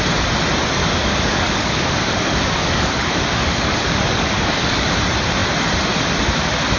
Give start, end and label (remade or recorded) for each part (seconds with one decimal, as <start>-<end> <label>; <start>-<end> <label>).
0.0-0.8 recorded; 0.8-4.9 remade; 4.9-6.8 recorded